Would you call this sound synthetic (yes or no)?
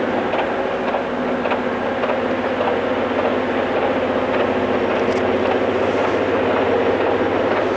no